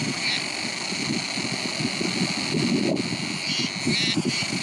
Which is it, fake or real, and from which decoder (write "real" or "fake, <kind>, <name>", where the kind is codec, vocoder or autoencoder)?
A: real